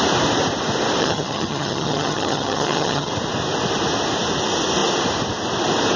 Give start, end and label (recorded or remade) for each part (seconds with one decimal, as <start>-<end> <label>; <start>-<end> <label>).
0.0-1.0 recorded; 1.0-3.1 remade; 3.1-6.0 recorded